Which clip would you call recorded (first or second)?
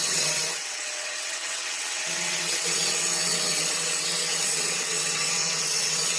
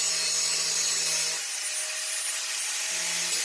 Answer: second